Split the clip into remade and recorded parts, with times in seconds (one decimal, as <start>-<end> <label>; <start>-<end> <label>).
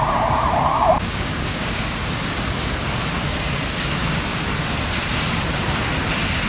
0.0-0.7 recorded; 0.7-2.1 remade; 2.1-4.0 recorded; 4.0-4.5 remade; 4.5-6.5 recorded